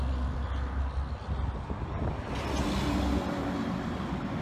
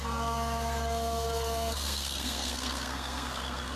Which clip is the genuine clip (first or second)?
first